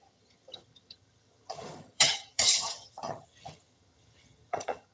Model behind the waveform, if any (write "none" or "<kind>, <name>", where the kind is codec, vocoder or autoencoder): vocoder, HiFi-GAN